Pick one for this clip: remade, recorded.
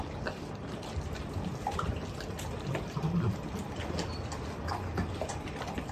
remade